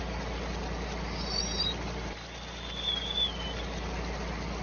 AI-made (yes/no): no